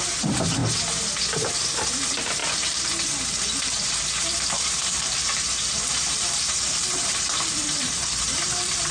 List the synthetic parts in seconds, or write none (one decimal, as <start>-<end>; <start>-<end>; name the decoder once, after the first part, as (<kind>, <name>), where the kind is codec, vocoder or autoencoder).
0.0-0.6 (vocoder, BigVGAN v2); 1.2-8.9